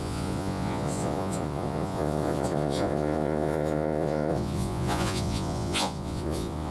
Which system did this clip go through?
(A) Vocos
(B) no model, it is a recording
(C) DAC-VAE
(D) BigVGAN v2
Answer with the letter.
A